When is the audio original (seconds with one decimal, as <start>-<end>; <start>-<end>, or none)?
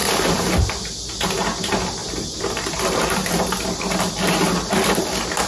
0.6-2.0; 2.8-3.2; 4.1-5.5